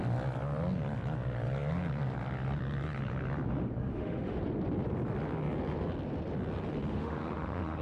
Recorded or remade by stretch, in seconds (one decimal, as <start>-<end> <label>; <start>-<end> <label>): 0.0-3.9 recorded; 3.9-4.4 remade; 4.4-6.9 recorded; 6.9-7.8 remade